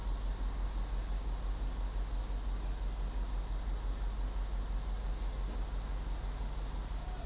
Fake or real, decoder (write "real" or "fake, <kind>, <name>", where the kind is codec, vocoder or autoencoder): real